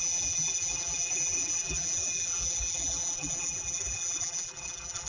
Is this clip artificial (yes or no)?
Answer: yes